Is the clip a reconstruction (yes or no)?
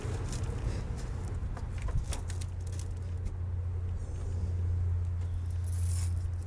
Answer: no